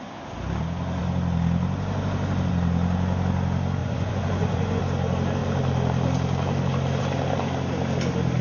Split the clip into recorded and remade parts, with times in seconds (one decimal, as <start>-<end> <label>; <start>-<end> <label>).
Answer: 0.0-3.8 recorded; 3.8-4.8 remade; 4.8-8.4 recorded